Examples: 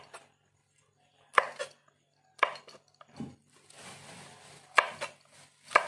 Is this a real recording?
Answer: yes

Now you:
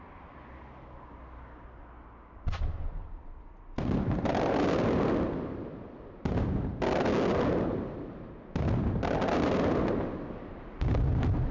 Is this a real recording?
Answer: yes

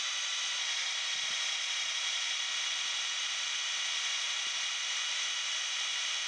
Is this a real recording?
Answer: no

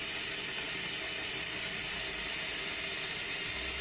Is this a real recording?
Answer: yes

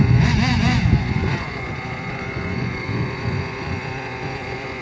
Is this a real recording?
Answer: no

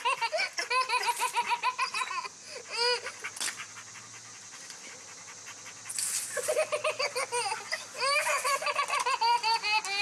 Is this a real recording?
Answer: yes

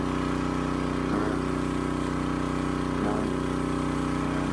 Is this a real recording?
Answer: yes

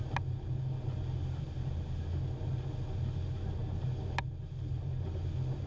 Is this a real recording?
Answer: yes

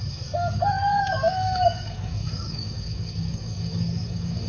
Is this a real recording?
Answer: no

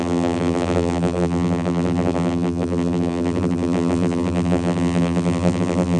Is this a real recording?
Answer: no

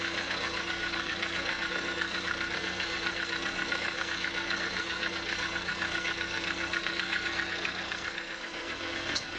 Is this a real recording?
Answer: no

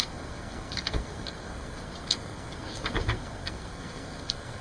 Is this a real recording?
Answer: no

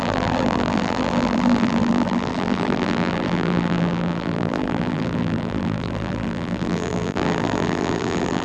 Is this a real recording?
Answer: no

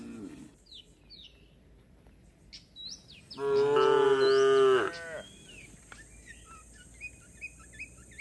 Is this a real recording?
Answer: yes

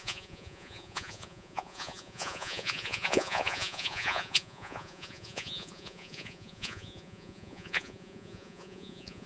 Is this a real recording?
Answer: no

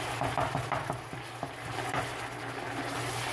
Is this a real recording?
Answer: yes